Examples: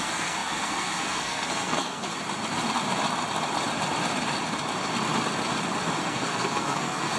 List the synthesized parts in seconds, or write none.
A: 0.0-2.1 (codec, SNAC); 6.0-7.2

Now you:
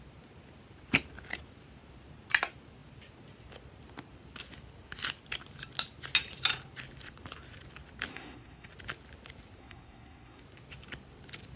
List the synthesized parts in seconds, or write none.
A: 8.1-8.7 (codec, SNAC); 9.6-10.4

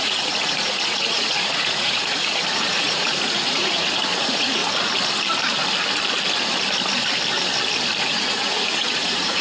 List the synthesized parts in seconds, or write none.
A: 0.0-4.6 (vocoder, Vocos); 8.0-9.4

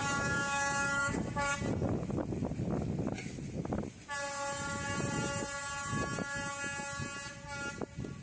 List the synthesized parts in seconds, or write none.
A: 0.0-1.5 (codec, DAC)